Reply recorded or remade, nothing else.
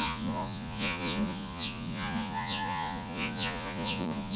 remade